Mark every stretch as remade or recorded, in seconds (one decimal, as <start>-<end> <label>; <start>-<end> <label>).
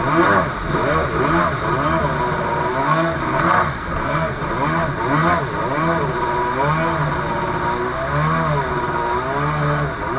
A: 0.0-2.8 recorded; 2.8-4.4 remade; 4.4-10.2 recorded